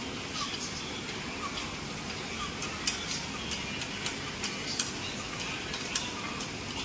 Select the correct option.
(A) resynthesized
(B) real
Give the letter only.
B